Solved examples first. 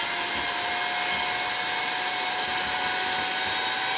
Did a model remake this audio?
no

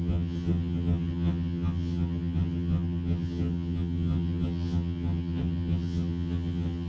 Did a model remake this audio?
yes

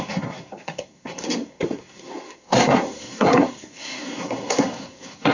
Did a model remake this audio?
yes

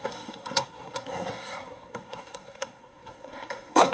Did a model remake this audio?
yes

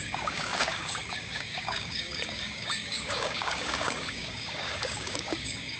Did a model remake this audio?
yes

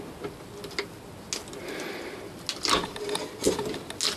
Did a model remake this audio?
no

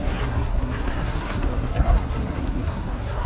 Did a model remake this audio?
yes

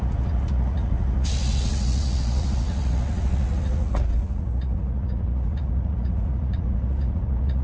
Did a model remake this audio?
yes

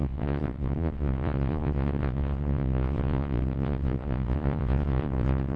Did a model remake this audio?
yes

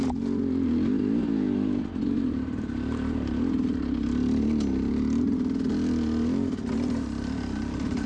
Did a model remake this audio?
no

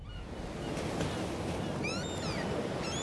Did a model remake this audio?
no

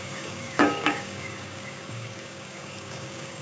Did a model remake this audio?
yes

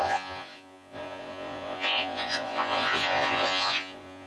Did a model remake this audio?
yes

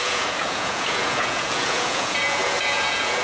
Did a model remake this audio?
yes